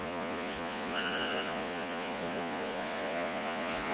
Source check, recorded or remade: remade